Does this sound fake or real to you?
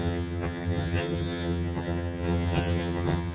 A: fake